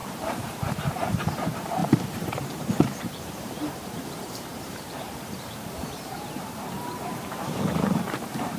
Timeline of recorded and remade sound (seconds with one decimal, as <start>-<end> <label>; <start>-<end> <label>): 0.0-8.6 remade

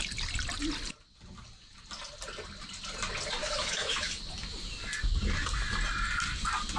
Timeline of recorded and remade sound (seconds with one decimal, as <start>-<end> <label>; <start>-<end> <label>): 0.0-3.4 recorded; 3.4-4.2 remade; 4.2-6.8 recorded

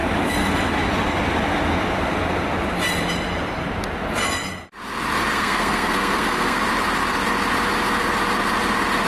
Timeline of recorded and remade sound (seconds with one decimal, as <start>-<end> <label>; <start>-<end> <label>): 0.0-5.3 recorded; 5.3-6.6 remade; 6.6-9.1 recorded

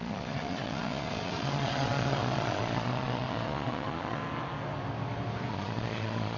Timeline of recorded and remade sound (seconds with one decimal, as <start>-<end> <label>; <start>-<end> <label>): 0.0-4.2 remade; 4.2-5.5 recorded; 5.5-6.4 remade